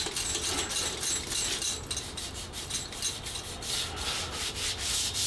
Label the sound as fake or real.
real